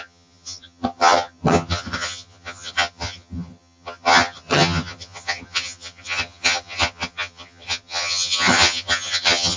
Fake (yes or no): yes